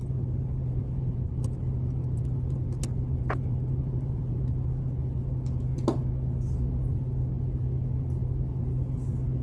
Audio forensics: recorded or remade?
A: recorded